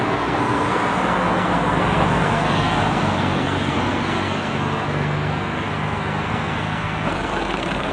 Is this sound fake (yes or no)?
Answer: yes